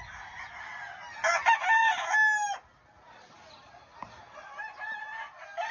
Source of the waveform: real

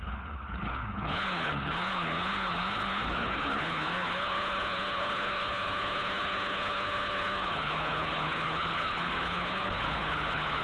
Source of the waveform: fake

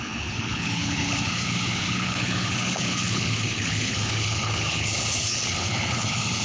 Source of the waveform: fake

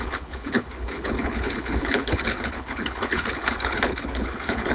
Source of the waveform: fake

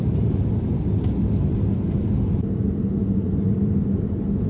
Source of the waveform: real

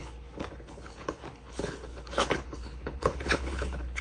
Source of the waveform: fake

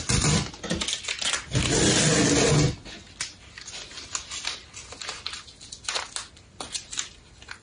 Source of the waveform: real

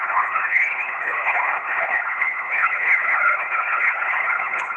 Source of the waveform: fake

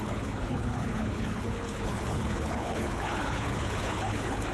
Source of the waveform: fake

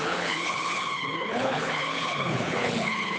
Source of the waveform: fake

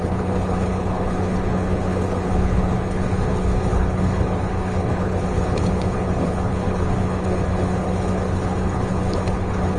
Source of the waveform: fake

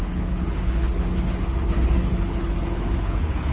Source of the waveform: fake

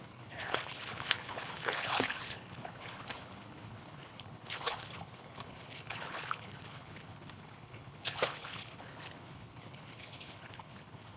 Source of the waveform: fake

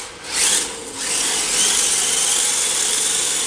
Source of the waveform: real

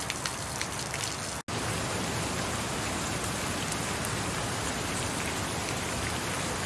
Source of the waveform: real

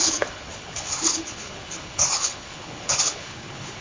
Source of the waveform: fake